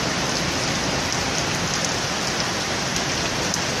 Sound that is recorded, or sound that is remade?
recorded